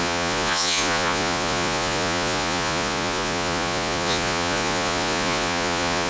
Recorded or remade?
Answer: remade